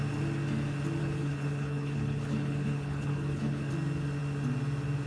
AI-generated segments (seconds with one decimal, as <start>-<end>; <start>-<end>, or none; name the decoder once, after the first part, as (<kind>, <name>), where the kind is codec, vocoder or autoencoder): 1.0-3.7 (codec, HILCodec)

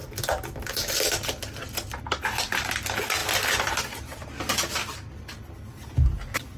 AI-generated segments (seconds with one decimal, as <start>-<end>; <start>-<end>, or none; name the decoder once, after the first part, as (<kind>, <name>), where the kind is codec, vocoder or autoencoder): 4.8-5.9 (vocoder, BigVGAN v2)

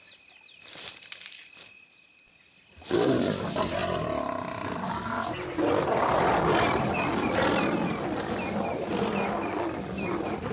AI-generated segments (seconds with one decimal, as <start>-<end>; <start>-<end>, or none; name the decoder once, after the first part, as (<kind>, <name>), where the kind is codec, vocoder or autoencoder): none

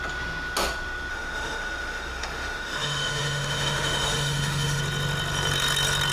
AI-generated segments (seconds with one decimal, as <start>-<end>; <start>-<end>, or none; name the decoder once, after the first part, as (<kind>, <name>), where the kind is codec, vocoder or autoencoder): 1.1-4.8 (autoencoder, DAC-VAE)

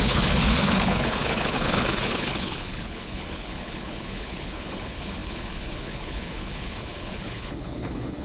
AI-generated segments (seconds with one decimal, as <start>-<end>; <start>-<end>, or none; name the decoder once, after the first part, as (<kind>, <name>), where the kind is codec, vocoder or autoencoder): 0.0-8.2 (codec, HILCodec)

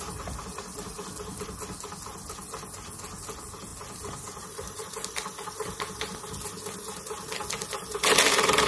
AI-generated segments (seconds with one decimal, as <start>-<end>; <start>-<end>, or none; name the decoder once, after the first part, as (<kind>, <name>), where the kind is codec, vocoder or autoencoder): none

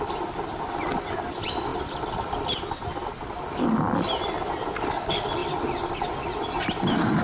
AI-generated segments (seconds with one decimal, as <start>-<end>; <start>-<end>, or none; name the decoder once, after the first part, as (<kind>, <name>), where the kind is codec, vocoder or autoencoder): none